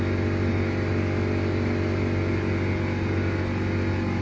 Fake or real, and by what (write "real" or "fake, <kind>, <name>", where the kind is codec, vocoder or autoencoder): real